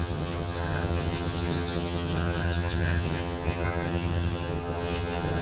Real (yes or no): no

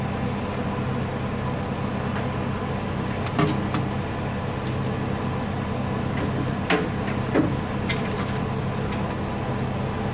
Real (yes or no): yes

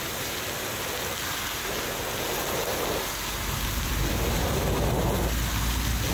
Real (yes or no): yes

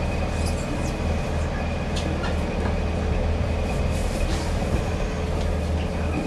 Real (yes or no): yes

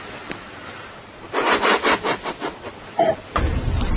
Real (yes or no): no